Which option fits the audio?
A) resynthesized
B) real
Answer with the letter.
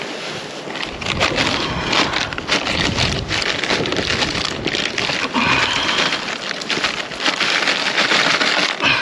B